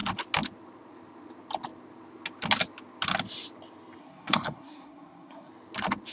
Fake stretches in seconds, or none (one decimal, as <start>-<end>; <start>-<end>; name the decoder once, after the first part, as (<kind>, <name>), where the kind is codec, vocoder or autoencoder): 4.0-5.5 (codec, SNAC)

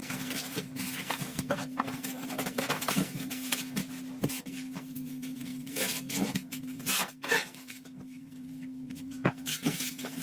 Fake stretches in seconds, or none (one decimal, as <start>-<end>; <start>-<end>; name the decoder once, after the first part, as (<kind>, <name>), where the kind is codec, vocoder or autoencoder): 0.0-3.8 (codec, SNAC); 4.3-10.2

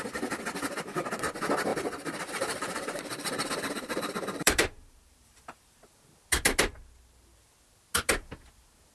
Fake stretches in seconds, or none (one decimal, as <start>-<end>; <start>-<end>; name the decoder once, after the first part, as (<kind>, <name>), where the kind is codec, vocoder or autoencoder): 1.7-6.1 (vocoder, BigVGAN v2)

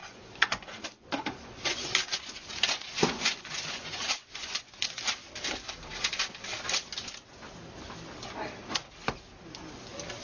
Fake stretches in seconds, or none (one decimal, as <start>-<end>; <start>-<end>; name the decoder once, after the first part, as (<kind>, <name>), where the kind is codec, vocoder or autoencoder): 0.0-4.9 (vocoder, Vocos)